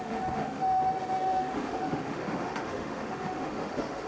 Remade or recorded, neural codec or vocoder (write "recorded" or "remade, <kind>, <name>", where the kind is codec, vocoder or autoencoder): remade, autoencoder, DAC-VAE